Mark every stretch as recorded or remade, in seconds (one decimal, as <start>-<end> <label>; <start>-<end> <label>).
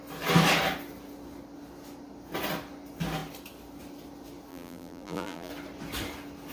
0.0-4.5 recorded; 4.5-5.5 remade; 5.5-6.5 recorded